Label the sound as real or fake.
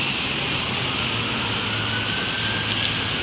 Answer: real